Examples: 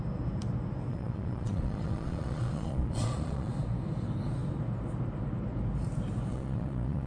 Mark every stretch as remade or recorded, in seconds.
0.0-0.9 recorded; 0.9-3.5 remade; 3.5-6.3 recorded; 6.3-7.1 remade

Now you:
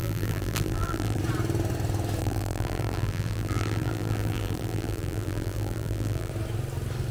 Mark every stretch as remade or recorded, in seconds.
0.0-1.2 remade; 1.2-2.2 recorded; 2.2-6.3 remade; 6.3-7.1 recorded